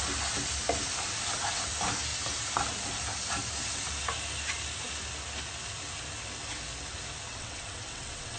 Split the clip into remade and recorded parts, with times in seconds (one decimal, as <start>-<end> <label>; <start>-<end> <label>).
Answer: 0.0-7.3 recorded; 7.3-8.4 remade